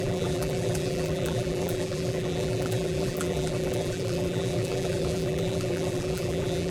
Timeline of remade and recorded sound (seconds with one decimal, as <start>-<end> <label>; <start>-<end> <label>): 0.0-6.7 remade